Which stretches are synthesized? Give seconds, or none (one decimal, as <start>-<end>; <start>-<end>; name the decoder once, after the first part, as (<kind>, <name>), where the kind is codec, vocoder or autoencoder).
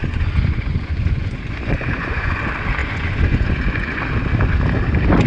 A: 0.0-2.4 (vocoder, Vocos); 2.8-4.0